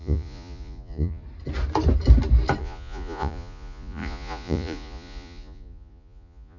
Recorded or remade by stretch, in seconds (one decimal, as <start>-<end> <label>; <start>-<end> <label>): 0.0-1.2 remade; 1.2-2.6 recorded; 2.6-6.6 remade